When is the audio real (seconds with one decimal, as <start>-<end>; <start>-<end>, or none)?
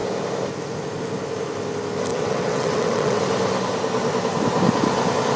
0.0-2.1; 3.2-5.4